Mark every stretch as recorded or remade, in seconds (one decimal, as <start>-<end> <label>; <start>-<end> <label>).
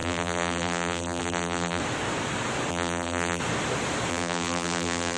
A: 0.0-1.8 remade; 1.8-2.7 recorded; 2.7-3.4 remade; 3.4-4.1 recorded; 4.1-5.2 remade